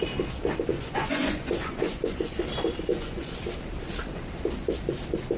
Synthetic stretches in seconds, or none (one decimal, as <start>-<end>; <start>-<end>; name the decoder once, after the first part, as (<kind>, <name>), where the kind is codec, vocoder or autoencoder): 0.7-2.4 (vocoder, Vocos); 2.9-3.4